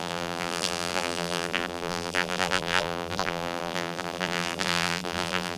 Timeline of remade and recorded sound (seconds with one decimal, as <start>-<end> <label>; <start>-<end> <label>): 0.0-5.6 remade